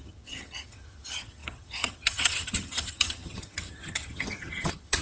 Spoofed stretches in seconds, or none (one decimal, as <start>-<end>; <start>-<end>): 0.0-5.0